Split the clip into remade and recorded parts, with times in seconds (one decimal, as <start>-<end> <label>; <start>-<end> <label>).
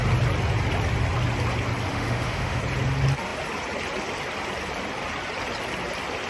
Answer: 0.0-1.9 recorded; 1.9-2.6 remade; 2.6-6.3 recorded